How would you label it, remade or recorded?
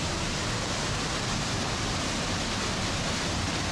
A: recorded